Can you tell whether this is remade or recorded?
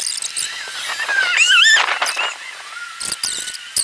recorded